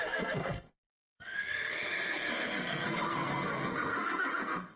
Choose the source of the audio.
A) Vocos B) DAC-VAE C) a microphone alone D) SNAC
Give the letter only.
D